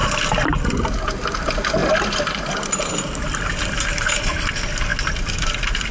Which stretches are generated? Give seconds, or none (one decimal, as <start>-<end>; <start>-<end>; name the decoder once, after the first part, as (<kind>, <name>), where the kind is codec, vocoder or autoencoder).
none